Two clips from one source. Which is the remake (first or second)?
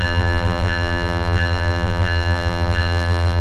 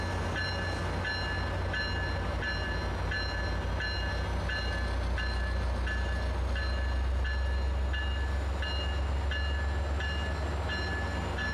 first